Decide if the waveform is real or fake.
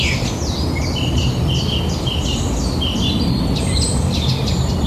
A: real